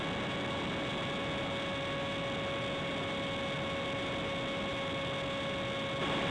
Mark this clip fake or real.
real